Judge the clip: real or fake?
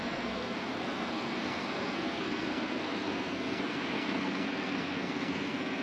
fake